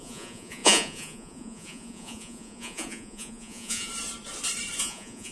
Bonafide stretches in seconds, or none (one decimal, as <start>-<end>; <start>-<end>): 3.9-4.8